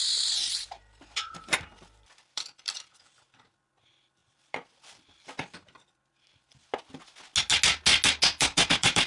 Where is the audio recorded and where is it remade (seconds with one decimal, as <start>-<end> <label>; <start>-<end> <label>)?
0.0-0.4 recorded; 0.4-3.2 remade; 3.2-4.2 recorded; 4.2-6.8 remade; 6.8-8.3 recorded; 8.3-9.1 remade